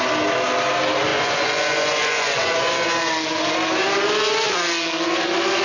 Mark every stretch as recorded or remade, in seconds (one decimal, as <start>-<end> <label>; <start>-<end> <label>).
0.0-1.1 recorded; 1.1-3.1 remade; 3.1-5.6 recorded